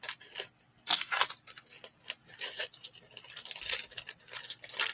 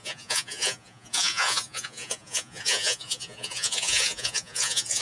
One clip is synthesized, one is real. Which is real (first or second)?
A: first